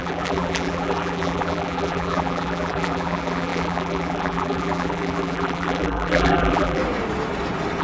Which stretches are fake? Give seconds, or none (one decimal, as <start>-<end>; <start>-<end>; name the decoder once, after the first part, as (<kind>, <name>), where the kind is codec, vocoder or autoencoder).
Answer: 0.0-6.8 (vocoder, BigVGAN v2)